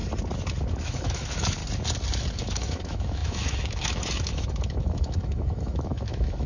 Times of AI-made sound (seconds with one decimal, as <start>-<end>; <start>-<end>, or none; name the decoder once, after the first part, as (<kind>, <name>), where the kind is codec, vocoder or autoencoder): 0.7-1.6 (autoencoder, DAC-VAE); 2.4-6.5